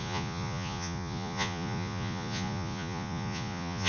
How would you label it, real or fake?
fake